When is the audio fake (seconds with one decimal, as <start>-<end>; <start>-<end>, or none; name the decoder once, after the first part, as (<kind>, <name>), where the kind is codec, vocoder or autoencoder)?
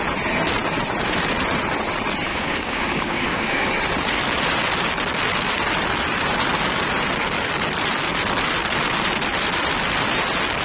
2.3-3.7 (codec, DAC)